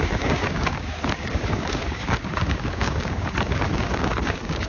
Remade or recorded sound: remade